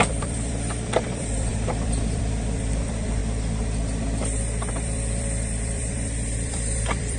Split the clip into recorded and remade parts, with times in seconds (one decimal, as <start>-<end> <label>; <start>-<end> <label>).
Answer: 0.0-3.2 remade; 3.2-4.7 recorded; 4.7-7.2 remade